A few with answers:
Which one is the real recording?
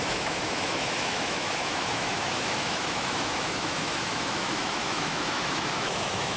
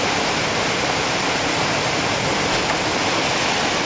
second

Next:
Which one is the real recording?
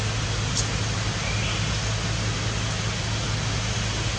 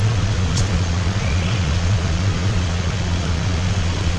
first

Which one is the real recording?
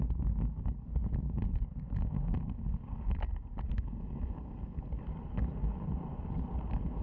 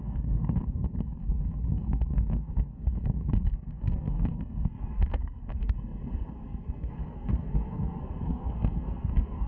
first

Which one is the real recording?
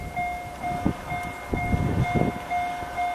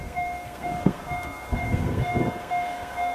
first